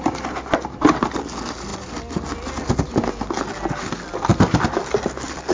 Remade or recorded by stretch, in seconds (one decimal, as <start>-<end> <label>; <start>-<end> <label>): 0.0-5.5 recorded